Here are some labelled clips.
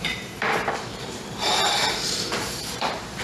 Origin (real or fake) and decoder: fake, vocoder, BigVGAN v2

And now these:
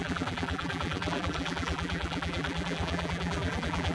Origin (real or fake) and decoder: fake, vocoder, BigVGAN v2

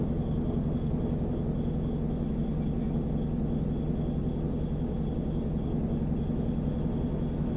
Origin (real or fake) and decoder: real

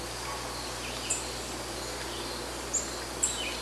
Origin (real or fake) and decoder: real